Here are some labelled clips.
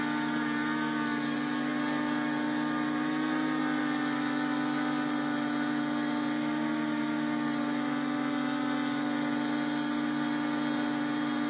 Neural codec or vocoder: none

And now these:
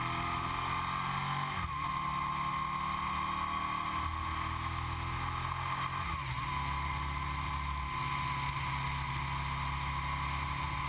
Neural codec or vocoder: none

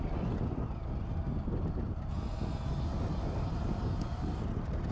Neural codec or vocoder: none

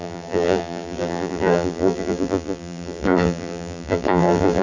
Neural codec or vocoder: vocoder, BigVGAN v2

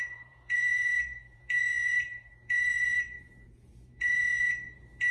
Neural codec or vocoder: vocoder, Vocos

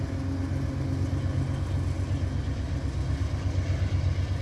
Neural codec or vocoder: none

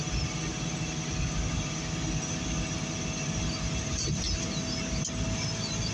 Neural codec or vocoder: none